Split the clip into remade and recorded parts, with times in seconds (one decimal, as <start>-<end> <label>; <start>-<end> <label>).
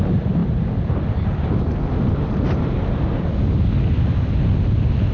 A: 0.0-5.1 recorded